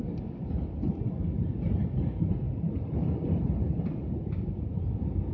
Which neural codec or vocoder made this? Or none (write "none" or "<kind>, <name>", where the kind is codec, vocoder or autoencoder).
none